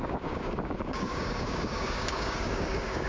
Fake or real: fake